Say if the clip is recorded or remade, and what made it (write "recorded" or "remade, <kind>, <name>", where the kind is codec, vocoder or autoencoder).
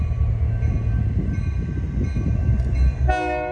recorded